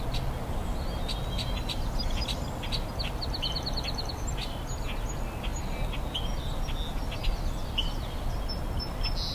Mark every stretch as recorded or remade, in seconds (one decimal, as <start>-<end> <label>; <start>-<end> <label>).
0.0-9.3 recorded